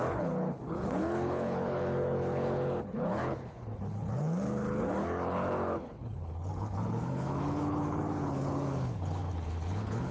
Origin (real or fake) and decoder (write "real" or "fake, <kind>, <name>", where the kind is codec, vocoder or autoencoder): fake, codec, HILCodec